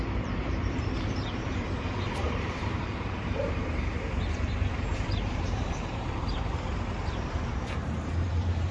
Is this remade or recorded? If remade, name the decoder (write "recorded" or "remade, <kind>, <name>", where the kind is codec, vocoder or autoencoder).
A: remade, vocoder, BigVGAN v2